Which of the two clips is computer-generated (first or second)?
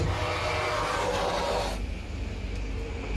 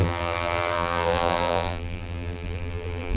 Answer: second